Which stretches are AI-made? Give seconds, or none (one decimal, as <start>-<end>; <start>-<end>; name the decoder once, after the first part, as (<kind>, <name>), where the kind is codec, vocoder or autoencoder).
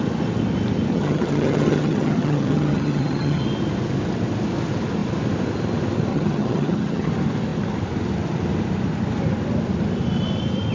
0.9-3.4 (vocoder, HiFi-GAN); 6.1-7.1